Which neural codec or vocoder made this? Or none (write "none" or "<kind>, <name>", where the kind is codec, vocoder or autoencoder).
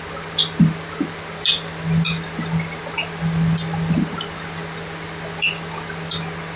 none